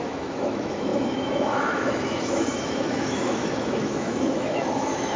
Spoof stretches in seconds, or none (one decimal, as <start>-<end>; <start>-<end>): 0.0-5.2